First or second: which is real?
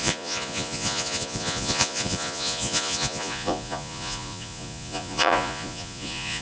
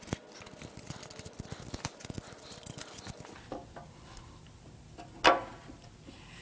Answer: second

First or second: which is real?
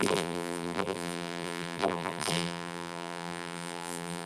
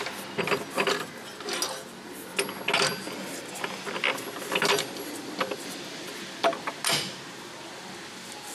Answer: second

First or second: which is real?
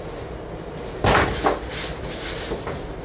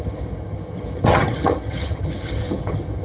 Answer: first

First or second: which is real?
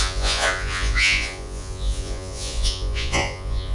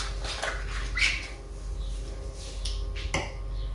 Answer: second